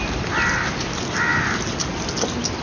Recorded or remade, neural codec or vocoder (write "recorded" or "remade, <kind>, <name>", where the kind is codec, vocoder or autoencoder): recorded